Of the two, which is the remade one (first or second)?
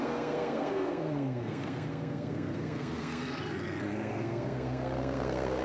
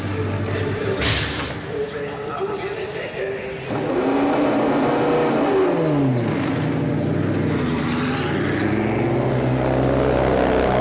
first